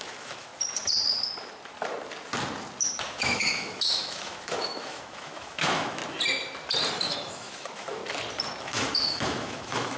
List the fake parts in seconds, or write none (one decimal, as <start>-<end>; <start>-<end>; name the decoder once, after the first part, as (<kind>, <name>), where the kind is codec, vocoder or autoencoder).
0.0-0.5 (autoencoder, DAC-VAE); 3.0-6.0; 6.9-8.0; 8.6-10.0